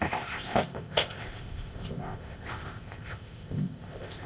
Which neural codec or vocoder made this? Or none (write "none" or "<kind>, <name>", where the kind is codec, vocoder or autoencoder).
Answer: codec, ZipCodec